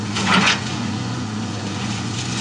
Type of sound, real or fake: fake